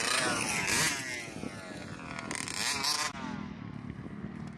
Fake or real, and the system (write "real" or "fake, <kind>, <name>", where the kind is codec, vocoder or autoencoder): real